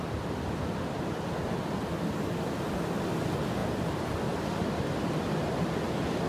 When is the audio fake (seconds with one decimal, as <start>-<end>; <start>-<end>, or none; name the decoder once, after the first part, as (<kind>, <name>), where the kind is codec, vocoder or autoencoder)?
3.6-4.2 (vocoder, BigVGAN v2)

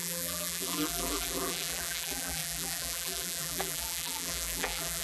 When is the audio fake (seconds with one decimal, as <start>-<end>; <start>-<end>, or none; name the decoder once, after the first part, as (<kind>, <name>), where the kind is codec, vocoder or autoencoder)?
0.0-5.0 (vocoder, BigVGAN v2)

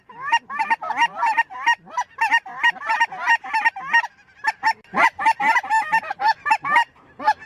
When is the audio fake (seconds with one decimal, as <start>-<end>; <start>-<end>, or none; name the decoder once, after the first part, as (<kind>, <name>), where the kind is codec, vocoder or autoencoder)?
0.0-7.5 (vocoder, BigVGAN v2)

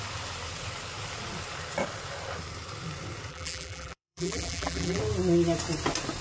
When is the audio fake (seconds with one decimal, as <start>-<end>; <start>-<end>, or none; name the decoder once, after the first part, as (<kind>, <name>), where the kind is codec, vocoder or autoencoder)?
3.3-5.0 (vocoder, BigVGAN v2)

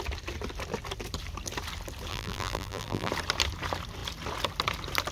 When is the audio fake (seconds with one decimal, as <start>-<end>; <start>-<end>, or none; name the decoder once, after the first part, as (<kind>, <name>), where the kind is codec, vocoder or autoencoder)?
2.1-3.1 (vocoder, BigVGAN v2)

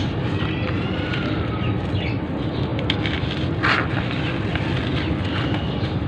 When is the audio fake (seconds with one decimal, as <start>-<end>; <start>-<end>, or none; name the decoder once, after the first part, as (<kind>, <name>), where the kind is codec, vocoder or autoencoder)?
1.1-1.8 (vocoder, BigVGAN v2)

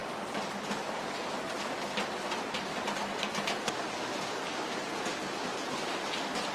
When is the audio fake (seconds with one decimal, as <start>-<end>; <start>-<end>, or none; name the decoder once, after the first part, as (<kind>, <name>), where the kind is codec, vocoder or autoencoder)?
0.0-1.0 (vocoder, BigVGAN v2)

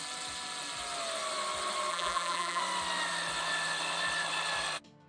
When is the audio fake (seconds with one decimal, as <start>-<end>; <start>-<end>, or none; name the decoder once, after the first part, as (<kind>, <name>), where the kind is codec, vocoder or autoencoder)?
1.9-2.6 (vocoder, BigVGAN v2)